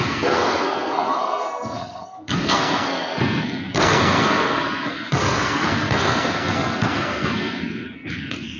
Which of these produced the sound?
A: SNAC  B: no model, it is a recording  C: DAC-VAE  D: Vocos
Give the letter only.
A